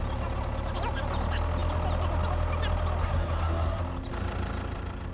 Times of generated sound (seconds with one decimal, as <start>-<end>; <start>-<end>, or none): 3.0-3.8